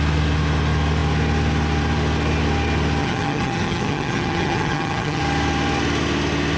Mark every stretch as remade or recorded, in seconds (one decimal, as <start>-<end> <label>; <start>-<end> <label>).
0.0-3.0 recorded; 3.0-5.2 remade; 5.2-6.6 recorded